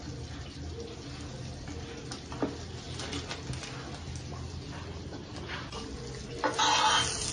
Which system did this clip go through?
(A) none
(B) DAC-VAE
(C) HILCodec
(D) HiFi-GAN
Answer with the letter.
A